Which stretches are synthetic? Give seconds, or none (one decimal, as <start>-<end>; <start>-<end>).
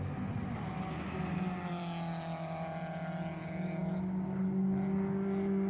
none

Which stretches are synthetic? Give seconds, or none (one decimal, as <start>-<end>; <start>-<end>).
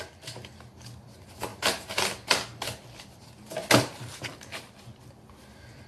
1.5-5.0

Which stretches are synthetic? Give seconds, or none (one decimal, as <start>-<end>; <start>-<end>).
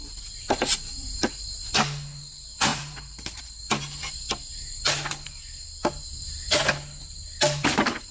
0.0-1.6; 2.7-3.4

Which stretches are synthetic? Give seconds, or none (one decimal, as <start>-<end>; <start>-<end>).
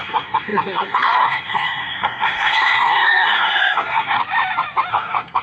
0.0-4.2; 4.9-5.4